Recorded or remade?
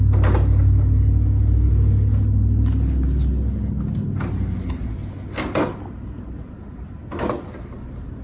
recorded